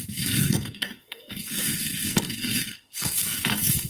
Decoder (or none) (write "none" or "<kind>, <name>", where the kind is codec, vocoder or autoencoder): codec, SNAC